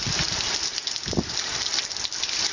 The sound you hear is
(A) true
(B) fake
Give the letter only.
A